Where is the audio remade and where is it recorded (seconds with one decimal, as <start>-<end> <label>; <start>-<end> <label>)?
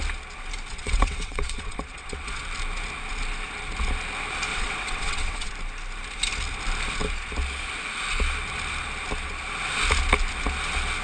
0.0-0.7 recorded; 0.7-2.4 remade; 2.4-4.5 recorded; 4.5-5.5 remade; 5.5-11.0 recorded